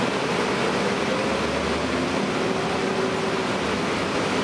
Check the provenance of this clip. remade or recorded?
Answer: recorded